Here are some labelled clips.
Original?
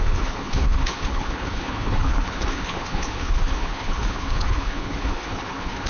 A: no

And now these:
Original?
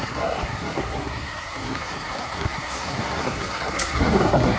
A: no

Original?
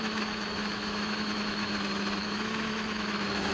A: no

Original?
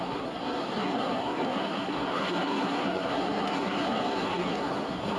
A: no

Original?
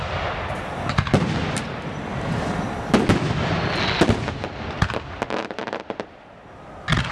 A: yes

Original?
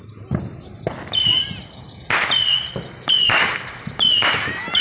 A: yes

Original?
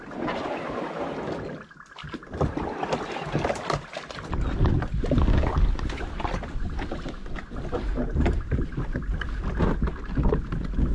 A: yes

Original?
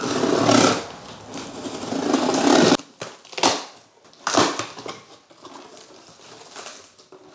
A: yes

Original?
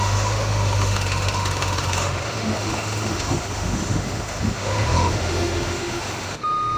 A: no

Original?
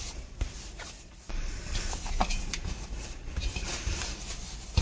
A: no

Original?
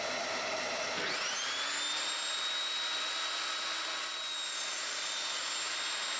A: yes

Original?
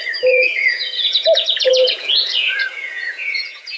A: no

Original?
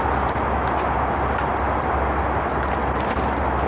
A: yes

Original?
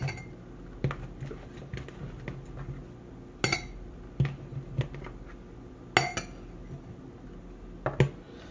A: yes